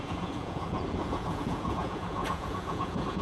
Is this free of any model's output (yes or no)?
no